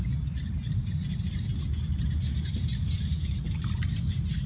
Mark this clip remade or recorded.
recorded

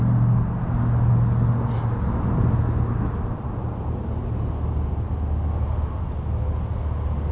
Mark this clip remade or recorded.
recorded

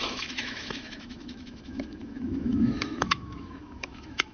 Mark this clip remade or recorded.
remade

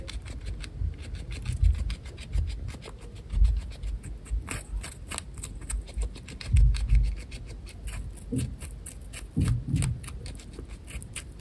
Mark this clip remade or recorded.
recorded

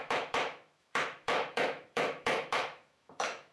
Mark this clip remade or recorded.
remade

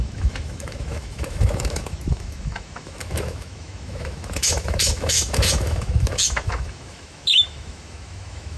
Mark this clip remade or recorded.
remade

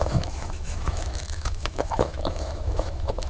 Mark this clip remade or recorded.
remade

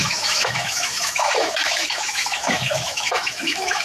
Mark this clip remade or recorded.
remade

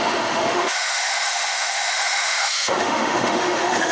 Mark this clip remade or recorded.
remade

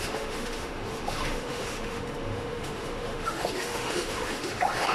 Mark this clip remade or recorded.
remade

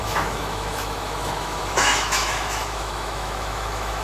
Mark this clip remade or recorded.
remade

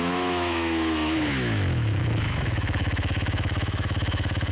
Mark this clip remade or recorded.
remade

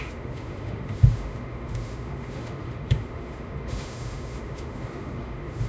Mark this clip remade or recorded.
remade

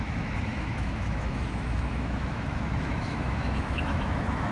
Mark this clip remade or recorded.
remade